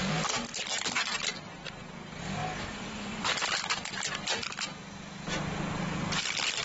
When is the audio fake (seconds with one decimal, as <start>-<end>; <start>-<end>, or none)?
none